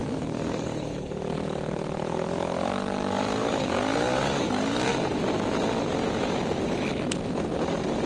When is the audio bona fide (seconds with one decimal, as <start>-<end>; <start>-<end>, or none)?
4.9-8.1